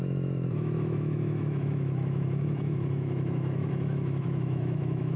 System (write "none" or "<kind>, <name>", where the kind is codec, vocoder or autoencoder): autoencoder, DAC-VAE